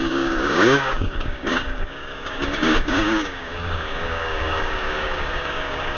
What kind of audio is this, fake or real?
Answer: fake